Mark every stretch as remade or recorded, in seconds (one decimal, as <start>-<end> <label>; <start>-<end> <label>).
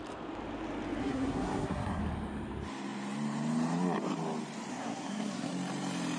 0.0-1.0 recorded; 1.0-2.0 remade; 2.0-4.7 recorded; 4.7-5.5 remade; 5.5-6.2 recorded